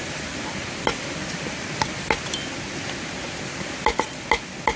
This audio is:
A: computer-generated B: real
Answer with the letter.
B